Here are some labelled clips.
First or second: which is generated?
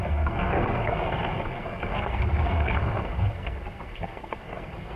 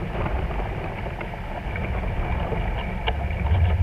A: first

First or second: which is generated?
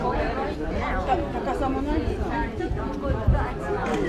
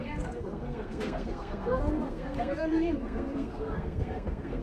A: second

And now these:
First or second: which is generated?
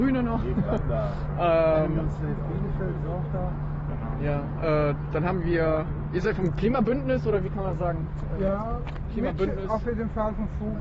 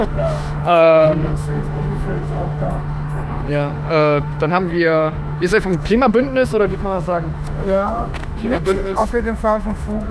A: second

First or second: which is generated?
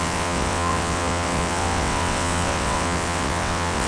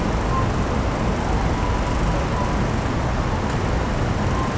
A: first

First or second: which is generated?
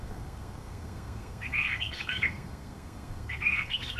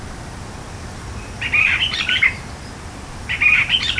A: first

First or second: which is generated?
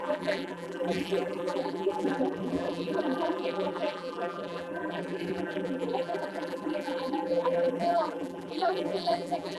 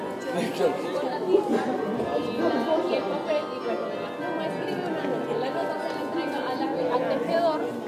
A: first